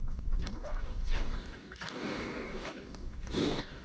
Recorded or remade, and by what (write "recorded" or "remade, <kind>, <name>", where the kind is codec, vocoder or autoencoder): remade, codec, DAC